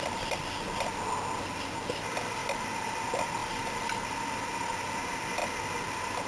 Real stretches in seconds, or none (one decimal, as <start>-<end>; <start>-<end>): 0.0-2.4; 3.0-3.4; 4.4-5.4